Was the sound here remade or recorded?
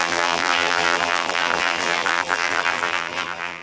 remade